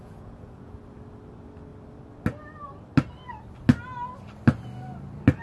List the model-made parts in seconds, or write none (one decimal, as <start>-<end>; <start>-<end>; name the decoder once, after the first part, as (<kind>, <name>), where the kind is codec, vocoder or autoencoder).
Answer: 0.0-0.8 (vocoder, Vocos)

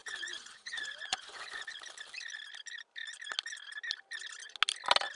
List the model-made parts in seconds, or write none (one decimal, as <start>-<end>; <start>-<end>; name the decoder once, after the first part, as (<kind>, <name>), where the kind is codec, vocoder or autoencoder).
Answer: 0.0-1.6 (vocoder, Vocos)

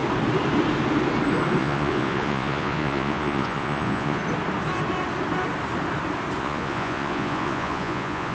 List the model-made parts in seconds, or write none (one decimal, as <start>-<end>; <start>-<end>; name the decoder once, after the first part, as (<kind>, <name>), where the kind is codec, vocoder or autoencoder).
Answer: 1.6-4.2 (vocoder, Vocos); 6.4-8.3